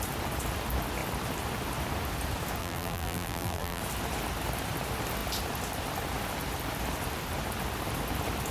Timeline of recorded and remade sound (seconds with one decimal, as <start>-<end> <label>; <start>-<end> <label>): 0.0-2.6 recorded; 2.6-3.8 remade; 3.8-8.5 recorded